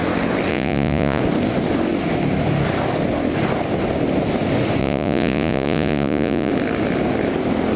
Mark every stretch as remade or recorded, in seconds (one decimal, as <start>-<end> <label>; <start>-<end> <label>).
0.0-0.5 recorded; 0.5-1.2 remade; 1.2-4.8 recorded; 4.8-6.5 remade; 6.5-7.8 recorded